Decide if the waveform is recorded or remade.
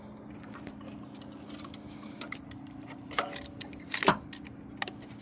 recorded